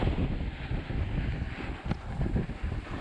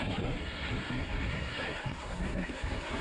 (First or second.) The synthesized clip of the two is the second